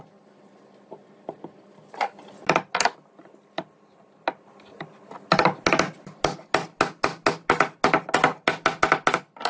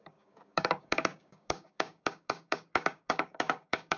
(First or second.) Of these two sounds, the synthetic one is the second